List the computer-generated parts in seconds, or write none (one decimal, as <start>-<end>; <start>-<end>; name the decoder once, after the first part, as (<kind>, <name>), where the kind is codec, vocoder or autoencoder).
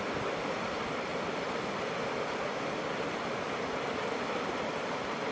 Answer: none